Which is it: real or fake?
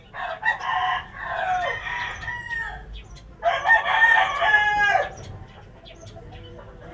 real